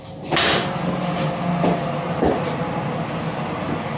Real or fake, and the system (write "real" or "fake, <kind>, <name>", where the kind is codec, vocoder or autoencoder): real